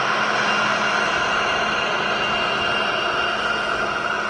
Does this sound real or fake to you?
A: real